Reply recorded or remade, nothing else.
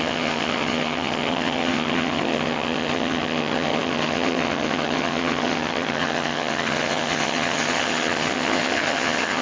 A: remade